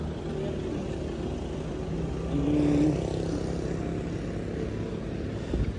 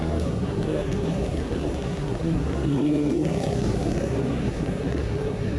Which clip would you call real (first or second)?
first